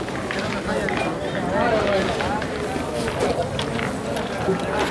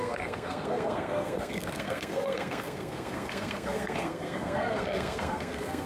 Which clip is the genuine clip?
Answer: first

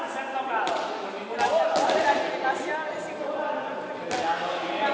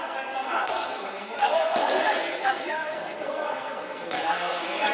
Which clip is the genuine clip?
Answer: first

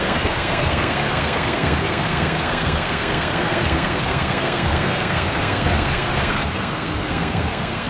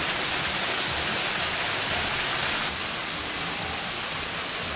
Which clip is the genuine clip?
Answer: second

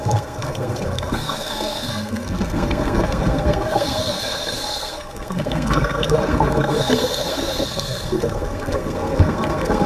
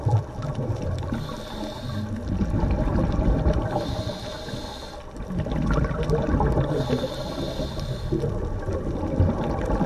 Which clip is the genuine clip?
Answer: second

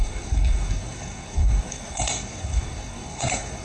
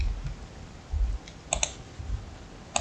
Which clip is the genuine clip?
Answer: second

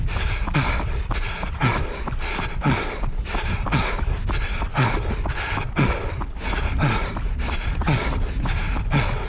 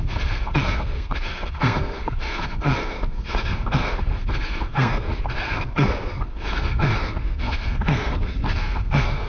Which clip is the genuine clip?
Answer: first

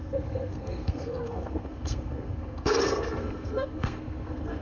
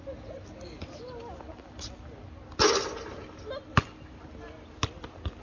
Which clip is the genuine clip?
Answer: second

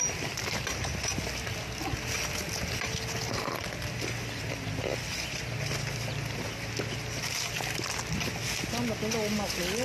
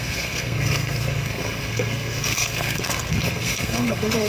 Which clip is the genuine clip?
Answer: first